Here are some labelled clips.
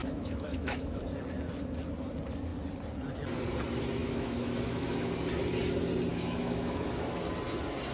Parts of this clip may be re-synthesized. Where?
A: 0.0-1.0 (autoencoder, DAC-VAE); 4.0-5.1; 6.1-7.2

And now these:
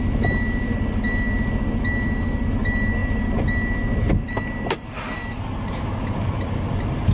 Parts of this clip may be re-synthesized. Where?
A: none

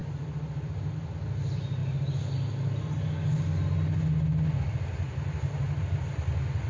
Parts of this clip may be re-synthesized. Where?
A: none

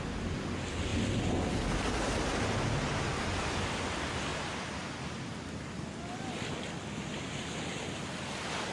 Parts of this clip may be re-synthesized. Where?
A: none